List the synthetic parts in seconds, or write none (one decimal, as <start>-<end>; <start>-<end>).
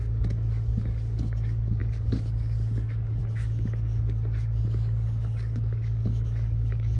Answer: 0.0-7.0